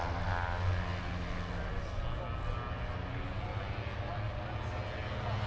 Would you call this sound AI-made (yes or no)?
no